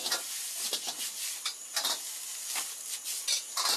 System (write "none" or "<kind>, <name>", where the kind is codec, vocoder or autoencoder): none